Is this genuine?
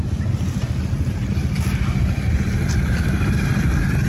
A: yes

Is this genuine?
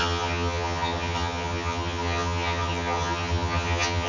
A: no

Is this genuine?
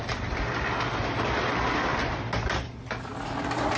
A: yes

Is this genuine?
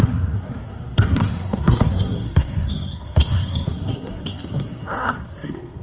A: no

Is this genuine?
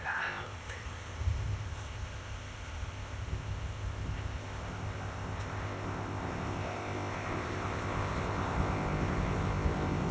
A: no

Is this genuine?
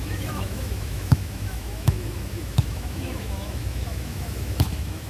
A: no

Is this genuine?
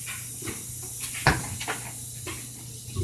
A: yes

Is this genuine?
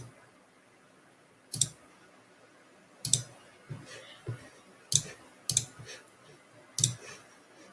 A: yes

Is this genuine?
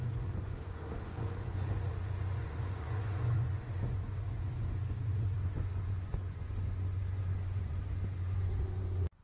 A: no